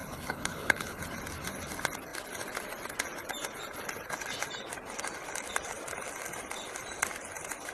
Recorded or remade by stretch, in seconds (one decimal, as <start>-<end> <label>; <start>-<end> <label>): 0.0-1.0 remade; 1.0-7.7 recorded